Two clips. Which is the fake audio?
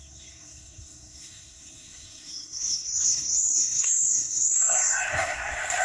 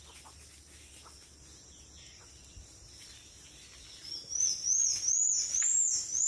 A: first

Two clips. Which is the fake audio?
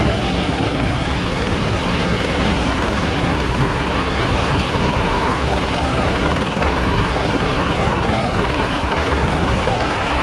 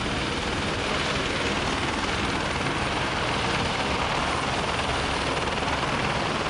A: first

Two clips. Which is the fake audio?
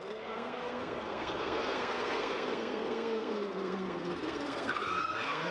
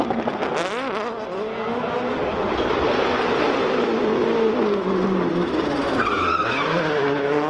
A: first